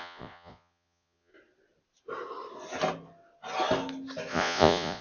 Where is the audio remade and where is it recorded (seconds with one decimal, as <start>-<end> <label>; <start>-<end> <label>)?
0.0-1.3 remade; 1.3-4.3 recorded; 4.3-5.0 remade